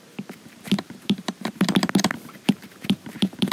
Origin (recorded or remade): remade